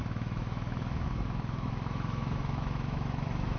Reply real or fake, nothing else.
fake